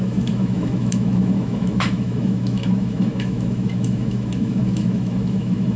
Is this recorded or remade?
remade